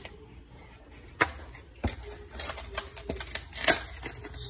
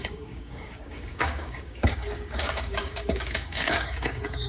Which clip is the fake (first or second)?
second